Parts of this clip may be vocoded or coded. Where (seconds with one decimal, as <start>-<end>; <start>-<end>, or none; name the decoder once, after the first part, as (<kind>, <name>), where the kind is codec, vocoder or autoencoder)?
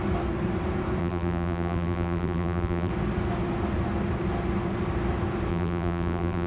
1.0-2.9 (vocoder, BigVGAN v2); 5.5-6.5